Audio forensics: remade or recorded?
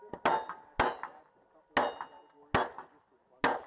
recorded